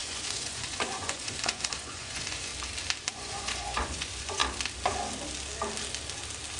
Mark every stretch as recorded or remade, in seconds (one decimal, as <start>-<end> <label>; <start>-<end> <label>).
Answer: 0.0-2.5 remade; 2.5-3.1 recorded; 3.1-4.4 remade; 4.4-6.6 recorded